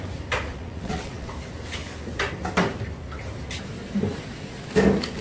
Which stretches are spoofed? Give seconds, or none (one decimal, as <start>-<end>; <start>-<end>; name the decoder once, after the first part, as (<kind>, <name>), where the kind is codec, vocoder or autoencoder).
0.5-1.3 (vocoder, WaveNeXt)